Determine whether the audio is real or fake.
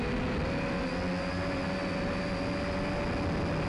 real